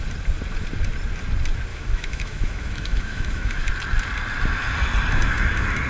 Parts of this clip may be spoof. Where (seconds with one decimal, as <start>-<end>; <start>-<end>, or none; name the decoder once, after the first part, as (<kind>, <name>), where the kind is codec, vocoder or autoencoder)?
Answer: 1.7-3.7 (autoencoder, DAC-VAE)